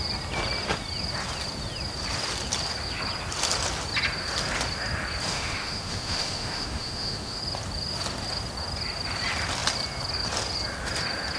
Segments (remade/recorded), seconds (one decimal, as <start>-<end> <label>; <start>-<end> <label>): 0.0-5.3 recorded; 5.3-7.4 remade; 7.4-11.4 recorded

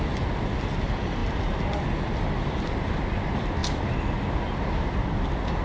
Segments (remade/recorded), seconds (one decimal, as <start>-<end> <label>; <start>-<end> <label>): 0.0-5.6 recorded